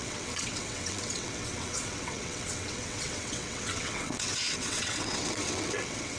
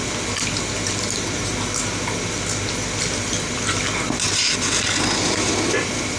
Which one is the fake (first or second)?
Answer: first